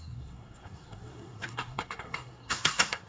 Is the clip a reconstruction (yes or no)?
yes